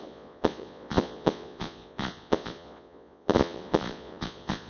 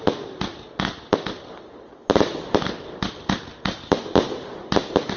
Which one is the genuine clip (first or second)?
second